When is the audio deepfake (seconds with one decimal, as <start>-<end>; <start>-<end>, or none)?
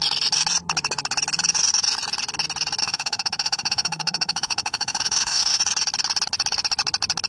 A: 2.8-5.6